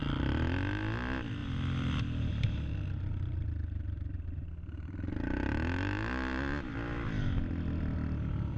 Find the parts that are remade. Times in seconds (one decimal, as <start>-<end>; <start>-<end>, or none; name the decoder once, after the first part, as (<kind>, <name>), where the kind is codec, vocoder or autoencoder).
none